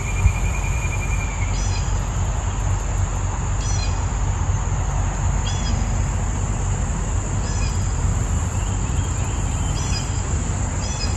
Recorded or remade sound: recorded